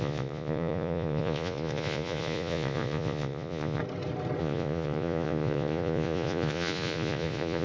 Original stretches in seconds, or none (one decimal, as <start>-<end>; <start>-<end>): 3.8-4.4